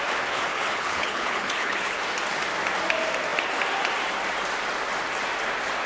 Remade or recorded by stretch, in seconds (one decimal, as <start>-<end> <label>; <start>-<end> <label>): 0.0-0.5 recorded; 0.5-2.0 remade; 2.0-5.9 recorded